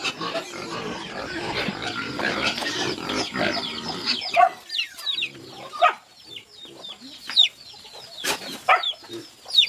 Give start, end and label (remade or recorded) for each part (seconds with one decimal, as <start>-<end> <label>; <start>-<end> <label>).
0.0-1.2 recorded; 1.2-2.6 remade; 2.6-3.6 recorded; 3.6-6.1 remade; 6.1-7.0 recorded; 7.0-9.7 remade